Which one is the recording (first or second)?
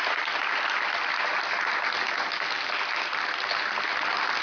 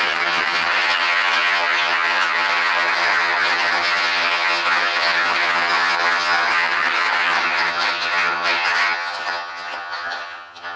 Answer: first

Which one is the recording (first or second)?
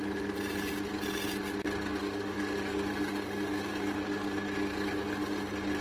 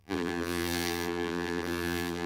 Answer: first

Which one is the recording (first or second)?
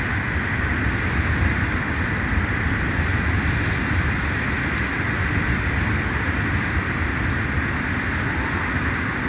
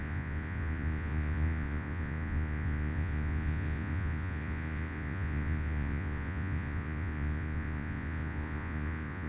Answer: first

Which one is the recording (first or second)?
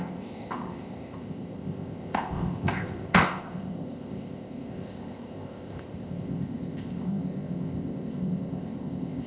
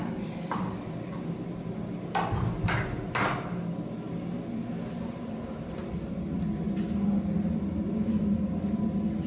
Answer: second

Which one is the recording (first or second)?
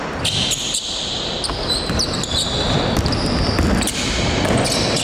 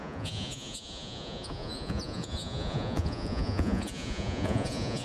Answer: first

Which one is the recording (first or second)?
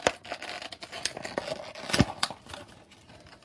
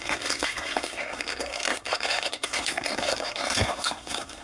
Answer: first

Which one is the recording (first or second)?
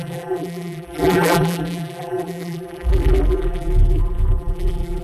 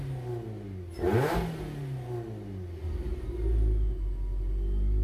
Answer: second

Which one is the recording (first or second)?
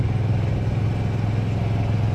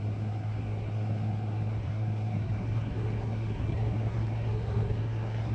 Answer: first